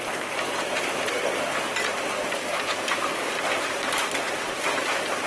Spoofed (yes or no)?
no